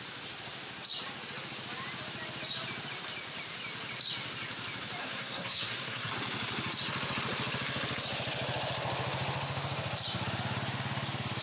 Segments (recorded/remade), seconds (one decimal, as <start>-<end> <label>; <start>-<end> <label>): 0.0-5.0 recorded; 5.0-6.1 remade; 6.1-11.4 recorded